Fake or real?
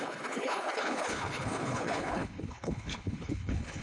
fake